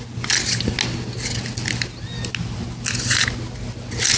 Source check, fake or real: real